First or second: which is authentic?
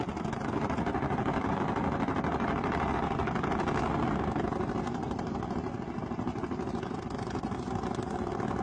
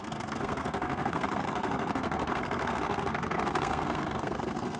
first